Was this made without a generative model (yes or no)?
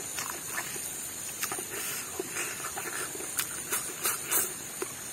yes